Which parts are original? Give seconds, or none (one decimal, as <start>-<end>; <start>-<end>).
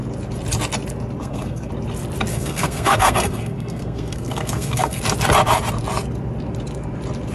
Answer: 0.0-1.2; 1.7-2.3; 5.0-7.3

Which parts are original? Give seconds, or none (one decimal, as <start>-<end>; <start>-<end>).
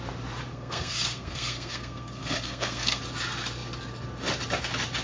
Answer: 0.0-0.5; 3.0-5.0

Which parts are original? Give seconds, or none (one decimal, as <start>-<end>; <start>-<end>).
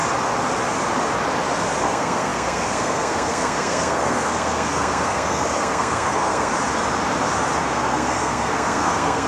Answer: 0.0-1.8; 6.5-7.6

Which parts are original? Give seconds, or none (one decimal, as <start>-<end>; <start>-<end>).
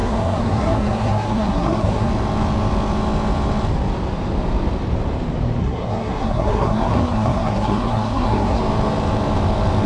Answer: 2.1-5.6; 8.6-9.9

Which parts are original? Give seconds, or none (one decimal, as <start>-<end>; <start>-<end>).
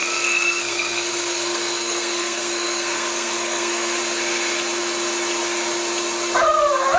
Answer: 4.0-7.0